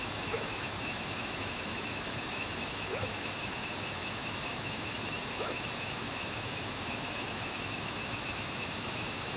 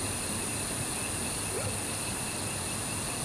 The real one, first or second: second